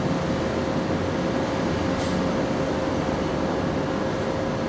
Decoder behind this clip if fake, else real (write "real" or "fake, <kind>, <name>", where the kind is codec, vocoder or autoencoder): real